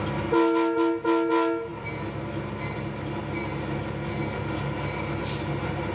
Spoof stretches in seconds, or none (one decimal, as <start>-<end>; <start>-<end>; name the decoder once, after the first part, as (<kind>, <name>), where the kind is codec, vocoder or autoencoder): none